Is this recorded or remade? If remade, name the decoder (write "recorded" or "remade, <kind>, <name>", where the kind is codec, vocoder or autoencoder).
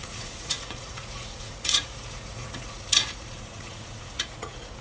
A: remade, vocoder, Vocos